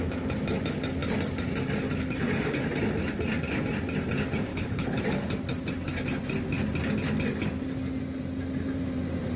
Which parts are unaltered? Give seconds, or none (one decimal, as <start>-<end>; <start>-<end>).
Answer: 0.0-4.5; 5.0-9.4